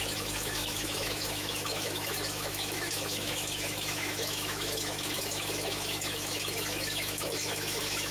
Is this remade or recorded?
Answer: remade